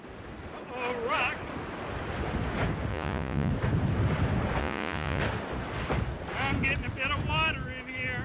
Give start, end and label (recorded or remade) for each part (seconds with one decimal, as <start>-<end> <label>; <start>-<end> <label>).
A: 0.0-2.9 recorded; 2.9-3.5 remade; 3.5-4.6 recorded; 4.6-5.2 remade; 5.2-8.2 recorded